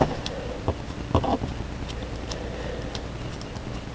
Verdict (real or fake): real